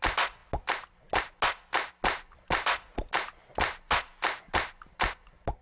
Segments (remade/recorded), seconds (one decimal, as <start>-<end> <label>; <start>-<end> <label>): 0.0-5.6 recorded